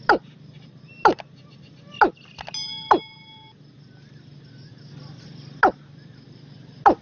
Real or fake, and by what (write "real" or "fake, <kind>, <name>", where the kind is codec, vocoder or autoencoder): real